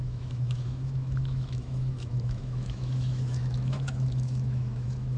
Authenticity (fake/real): fake